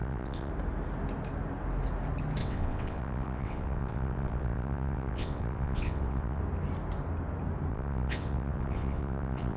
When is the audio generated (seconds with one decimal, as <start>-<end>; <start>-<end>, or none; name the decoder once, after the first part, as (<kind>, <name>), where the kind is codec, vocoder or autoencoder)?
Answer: 0.0-0.5 (vocoder, WaveNeXt); 2.4-6.4; 7.7-9.6

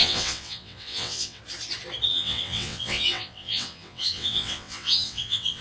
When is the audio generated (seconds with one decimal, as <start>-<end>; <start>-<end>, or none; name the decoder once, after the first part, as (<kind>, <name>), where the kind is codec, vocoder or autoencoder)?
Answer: 0.0-1.4 (vocoder, WaveNeXt); 2.1-5.6

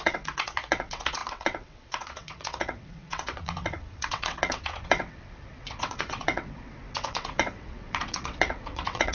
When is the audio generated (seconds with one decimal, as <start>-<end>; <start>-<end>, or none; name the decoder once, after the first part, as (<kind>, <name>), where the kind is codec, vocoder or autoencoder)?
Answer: 0.0-9.1 (vocoder, WaveNeXt)

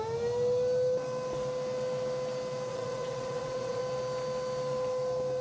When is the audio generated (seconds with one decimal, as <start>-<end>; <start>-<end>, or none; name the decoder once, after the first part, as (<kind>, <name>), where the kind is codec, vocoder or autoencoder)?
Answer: 2.7-3.8 (vocoder, WaveNeXt)

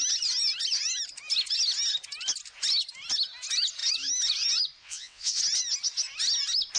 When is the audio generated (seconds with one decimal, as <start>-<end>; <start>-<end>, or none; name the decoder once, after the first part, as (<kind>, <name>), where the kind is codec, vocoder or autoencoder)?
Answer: 4.8-5.4 (vocoder, WaveNeXt)

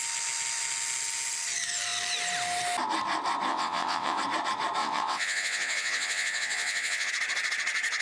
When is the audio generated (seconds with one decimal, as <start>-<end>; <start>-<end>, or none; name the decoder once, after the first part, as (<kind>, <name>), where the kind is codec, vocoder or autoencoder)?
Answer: 3.5-4.2 (vocoder, WaveNeXt); 4.8-7.1

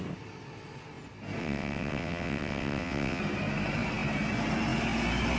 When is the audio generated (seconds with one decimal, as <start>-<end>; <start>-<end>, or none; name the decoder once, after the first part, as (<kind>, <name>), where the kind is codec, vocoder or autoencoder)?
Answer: 1.4-3.2 (vocoder, WaveNeXt)

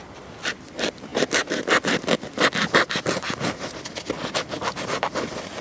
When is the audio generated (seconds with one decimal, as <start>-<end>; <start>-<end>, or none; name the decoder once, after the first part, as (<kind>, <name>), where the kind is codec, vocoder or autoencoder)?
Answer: none